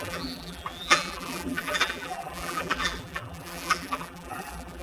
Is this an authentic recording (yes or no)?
no